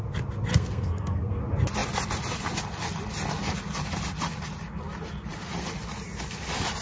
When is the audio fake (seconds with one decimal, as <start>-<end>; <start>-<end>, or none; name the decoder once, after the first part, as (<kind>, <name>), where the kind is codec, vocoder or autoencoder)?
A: 0.5-1.4 (codec, SNAC)